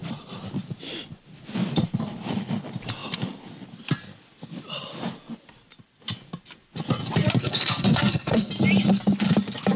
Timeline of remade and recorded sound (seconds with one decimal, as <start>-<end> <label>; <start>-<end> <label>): 0.0-7.4 recorded; 7.4-8.5 remade; 8.5-9.8 recorded